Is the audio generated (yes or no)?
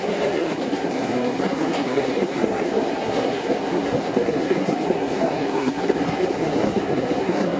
yes